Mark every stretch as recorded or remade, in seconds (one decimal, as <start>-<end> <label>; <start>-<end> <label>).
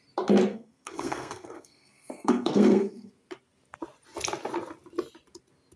0.0-0.5 recorded; 0.5-3.1 remade; 3.1-5.8 recorded